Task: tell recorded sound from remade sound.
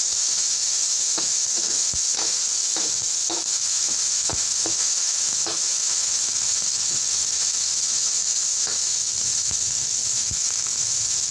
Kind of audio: remade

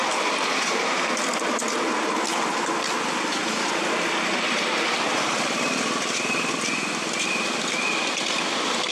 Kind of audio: recorded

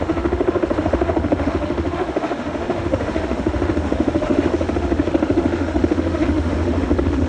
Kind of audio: remade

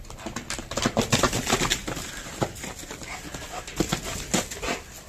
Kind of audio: recorded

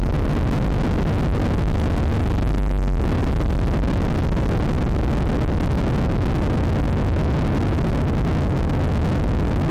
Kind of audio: recorded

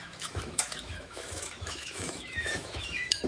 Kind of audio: remade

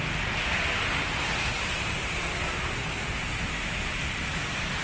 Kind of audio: recorded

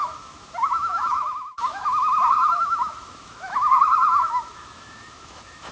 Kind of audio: remade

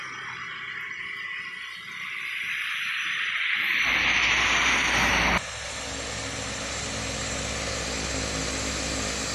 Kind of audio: recorded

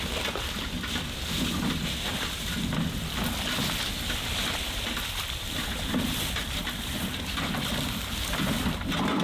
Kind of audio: recorded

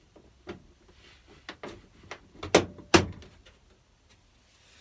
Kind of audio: recorded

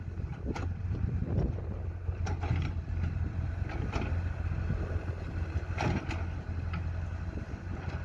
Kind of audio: recorded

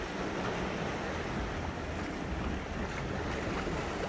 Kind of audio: recorded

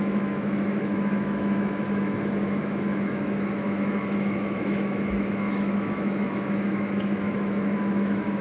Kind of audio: remade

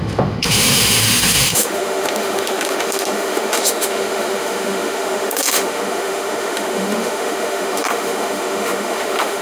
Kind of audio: remade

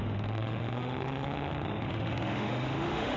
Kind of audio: remade